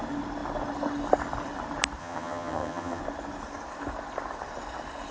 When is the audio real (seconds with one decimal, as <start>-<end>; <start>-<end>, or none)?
0.0-2.0; 3.0-5.1